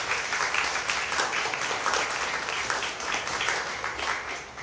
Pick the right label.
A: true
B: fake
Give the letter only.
B